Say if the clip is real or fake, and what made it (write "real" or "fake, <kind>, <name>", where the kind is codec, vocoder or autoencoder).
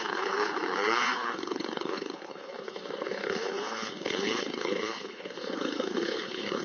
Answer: fake, codec, HILCodec